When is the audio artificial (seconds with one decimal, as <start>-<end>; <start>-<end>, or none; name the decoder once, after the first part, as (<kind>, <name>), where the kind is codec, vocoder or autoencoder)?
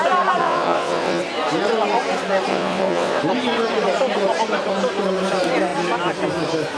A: 0.4-1.2 (vocoder, WaveNeXt); 2.5-3.2